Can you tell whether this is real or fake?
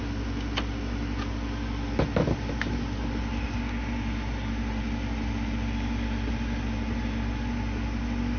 real